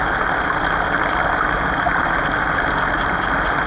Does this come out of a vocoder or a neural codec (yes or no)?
no